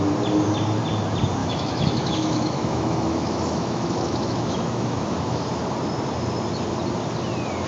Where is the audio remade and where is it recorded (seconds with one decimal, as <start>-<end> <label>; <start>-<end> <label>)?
0.0-1.4 recorded; 1.4-5.6 remade; 5.6-7.7 recorded